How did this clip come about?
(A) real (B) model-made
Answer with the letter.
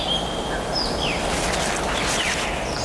A